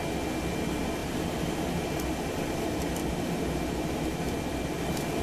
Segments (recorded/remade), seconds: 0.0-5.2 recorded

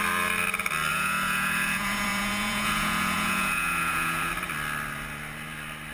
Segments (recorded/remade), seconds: 0.0-0.9 recorded; 0.9-4.3 remade; 4.3-5.9 recorded

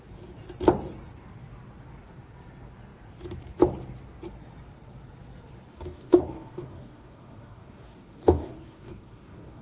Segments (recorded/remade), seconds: 0.0-5.7 recorded; 5.7-9.6 remade

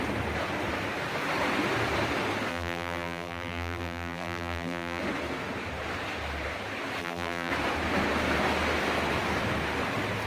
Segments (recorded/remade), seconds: 0.0-2.5 recorded; 2.5-5.0 remade; 5.0-7.0 recorded; 7.0-7.5 remade; 7.5-10.3 recorded